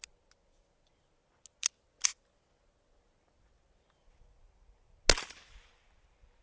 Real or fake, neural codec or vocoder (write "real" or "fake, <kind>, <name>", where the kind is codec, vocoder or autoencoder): real